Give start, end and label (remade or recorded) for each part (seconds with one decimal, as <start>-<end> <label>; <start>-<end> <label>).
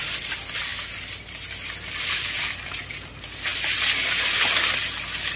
0.0-5.4 recorded